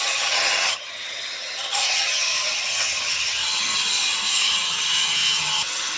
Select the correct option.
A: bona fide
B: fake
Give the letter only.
B